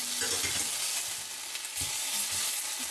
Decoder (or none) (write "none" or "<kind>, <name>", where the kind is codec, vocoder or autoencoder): none